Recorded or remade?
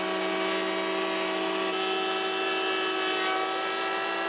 recorded